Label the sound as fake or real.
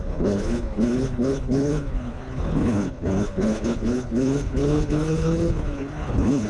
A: fake